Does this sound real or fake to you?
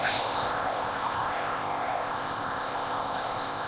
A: fake